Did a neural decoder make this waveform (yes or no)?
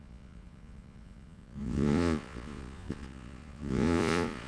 yes